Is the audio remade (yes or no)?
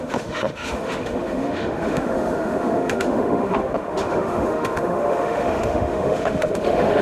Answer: yes